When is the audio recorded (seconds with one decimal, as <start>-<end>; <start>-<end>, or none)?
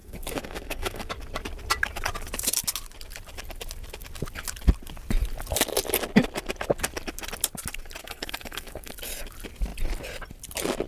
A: 1.1-8.0; 8.9-10.9